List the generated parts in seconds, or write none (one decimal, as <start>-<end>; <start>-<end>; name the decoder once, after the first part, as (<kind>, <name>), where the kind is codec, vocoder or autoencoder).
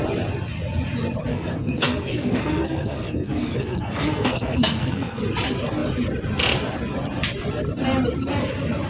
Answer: 1.3-5.2 (codec, SNAC)